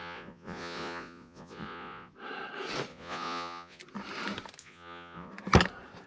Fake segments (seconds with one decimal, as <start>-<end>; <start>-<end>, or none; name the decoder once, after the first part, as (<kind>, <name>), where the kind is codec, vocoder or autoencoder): 0.0-2.1 (vocoder, Vocos); 2.9-3.8; 4.6-5.3